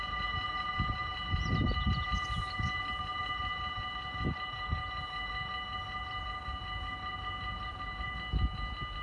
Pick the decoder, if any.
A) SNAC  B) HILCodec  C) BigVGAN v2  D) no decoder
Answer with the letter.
D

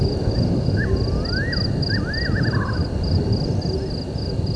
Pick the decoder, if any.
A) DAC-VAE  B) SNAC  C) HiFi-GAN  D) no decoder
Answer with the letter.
D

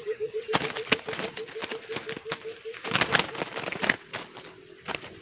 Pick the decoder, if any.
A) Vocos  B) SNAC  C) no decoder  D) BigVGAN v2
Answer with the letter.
C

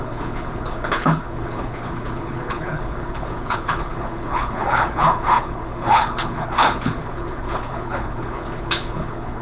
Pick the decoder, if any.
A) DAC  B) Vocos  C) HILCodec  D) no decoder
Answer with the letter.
C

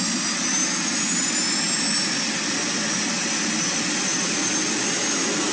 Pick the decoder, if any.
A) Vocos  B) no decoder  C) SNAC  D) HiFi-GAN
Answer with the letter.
B